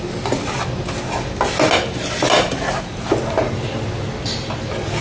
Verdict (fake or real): real